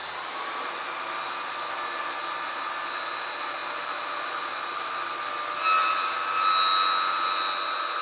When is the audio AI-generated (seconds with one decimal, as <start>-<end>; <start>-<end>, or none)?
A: none